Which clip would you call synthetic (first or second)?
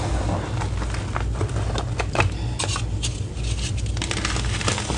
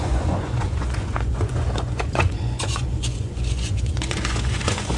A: second